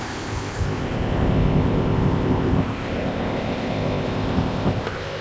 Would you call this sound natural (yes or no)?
no